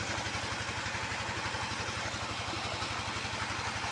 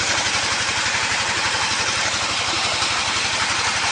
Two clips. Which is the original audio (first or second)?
first